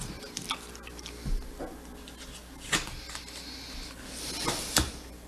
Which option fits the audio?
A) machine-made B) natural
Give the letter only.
B